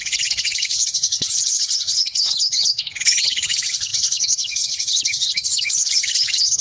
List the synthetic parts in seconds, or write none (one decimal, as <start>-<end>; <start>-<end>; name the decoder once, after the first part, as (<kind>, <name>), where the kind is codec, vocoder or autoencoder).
0.0-6.6 (codec, HILCodec)

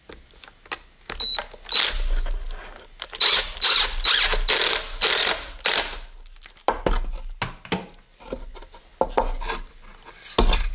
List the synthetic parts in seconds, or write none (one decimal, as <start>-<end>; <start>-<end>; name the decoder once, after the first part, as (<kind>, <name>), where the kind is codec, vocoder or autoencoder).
none